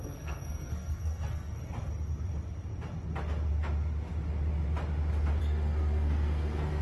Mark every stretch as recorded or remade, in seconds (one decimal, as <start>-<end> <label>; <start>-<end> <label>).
0.0-1.6 remade; 1.6-5.4 recorded; 5.4-6.8 remade